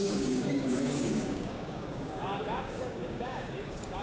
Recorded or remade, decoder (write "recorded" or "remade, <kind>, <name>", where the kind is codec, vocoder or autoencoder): remade, codec, DAC